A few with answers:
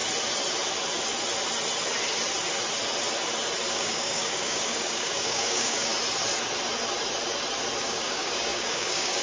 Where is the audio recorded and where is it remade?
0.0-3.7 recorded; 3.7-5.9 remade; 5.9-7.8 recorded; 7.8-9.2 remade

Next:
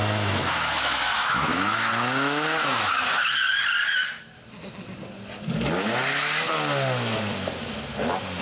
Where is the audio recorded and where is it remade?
0.0-3.2 remade; 3.2-8.4 recorded